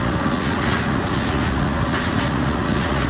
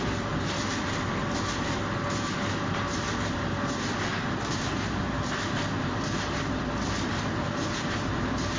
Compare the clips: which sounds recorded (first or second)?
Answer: second